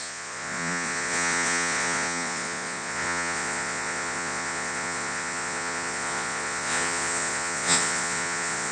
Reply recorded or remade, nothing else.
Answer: remade